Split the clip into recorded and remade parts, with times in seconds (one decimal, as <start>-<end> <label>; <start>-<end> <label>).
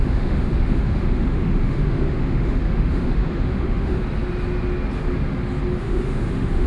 0.0-4.0 remade; 4.0-5.8 recorded; 5.8-6.7 remade